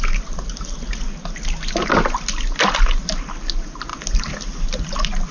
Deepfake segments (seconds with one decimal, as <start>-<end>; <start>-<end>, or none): none